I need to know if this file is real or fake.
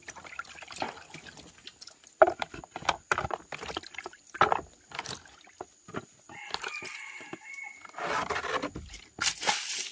real